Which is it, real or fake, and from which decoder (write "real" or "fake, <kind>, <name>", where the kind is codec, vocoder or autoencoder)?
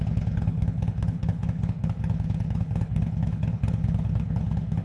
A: fake, codec, HILCodec